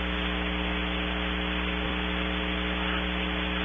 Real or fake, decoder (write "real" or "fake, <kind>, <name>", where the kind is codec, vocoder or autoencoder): real